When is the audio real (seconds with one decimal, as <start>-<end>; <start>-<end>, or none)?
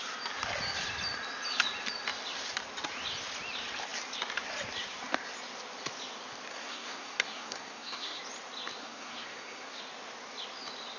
0.0-6.5; 8.2-8.8; 9.8-11.0